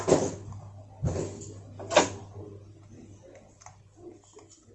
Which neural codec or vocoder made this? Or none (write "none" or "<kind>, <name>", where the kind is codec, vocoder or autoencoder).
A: none